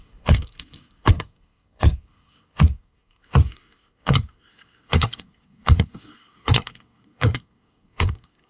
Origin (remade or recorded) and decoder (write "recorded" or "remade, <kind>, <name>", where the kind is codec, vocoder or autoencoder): remade, codec, SNAC